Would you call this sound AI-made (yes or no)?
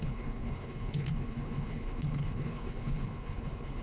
yes